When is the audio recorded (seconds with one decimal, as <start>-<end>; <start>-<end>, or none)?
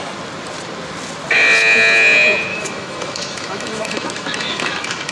0.0-2.5